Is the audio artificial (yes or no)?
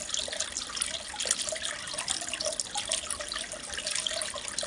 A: no